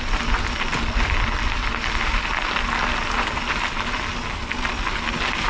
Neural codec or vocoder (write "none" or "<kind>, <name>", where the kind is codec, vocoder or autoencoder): none